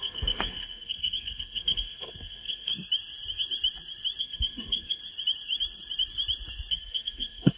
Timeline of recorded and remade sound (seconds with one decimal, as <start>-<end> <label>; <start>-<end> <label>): 0.0-2.7 remade; 2.7-4.2 recorded; 4.2-5.0 remade; 5.0-6.7 recorded; 6.7-7.6 remade